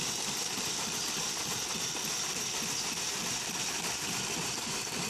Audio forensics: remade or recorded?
remade